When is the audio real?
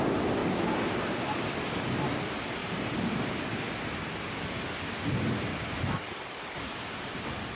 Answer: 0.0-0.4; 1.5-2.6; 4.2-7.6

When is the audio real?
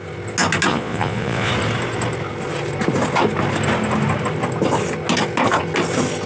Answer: 0.0-0.7; 1.5-6.3